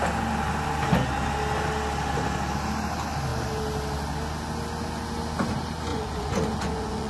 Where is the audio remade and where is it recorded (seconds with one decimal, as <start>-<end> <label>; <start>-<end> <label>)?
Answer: 0.0-5.9 recorded; 5.9-7.1 remade